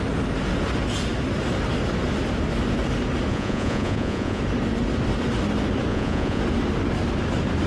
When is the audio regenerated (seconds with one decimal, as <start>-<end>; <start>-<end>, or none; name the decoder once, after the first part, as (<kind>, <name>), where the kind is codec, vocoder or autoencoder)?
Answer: 3.3-4.4 (vocoder, Vocos); 5.9-6.4

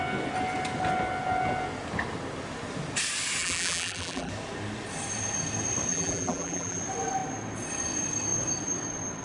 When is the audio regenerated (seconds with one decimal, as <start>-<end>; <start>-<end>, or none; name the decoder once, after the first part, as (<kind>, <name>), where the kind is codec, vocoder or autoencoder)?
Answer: 3.4-4.3 (vocoder, BigVGAN v2); 5.9-6.8

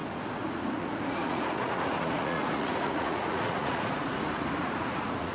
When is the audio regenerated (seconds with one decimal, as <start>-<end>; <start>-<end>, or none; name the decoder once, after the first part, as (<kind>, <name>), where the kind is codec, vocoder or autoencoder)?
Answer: 0.0-4.0 (vocoder, Vocos); 4.6-5.3

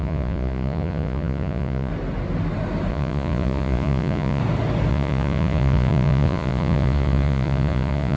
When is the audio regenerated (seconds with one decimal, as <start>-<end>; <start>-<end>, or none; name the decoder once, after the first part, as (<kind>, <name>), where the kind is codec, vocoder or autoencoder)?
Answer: 0.0-1.9 (vocoder, Vocos); 2.9-4.4; 4.9-8.2

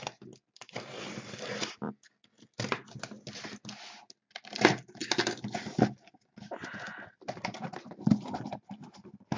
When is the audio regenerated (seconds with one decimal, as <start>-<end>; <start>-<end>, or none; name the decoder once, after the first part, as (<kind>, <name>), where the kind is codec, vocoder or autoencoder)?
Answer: none